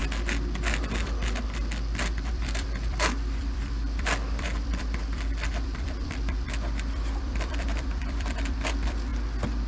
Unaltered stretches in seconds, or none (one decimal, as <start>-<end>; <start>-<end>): 0.0-2.3; 9.1-9.7